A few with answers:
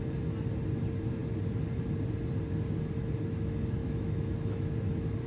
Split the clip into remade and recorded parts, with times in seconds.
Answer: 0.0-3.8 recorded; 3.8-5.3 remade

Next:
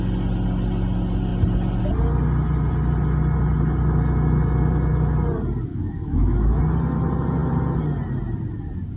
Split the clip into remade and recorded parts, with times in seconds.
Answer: 0.0-5.7 recorded; 5.7-6.6 remade; 6.6-9.0 recorded

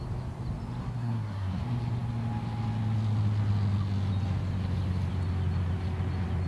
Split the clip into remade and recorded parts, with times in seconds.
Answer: 0.0-0.8 recorded; 0.8-1.6 remade; 1.6-6.5 recorded